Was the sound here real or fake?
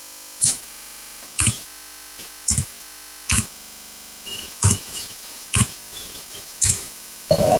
fake